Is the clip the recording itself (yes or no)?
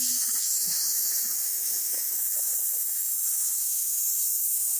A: no